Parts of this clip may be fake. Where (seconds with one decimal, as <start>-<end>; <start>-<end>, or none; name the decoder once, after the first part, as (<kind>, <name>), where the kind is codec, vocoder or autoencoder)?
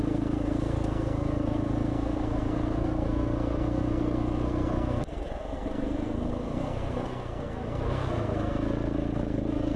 0.0-9.8 (codec, SNAC)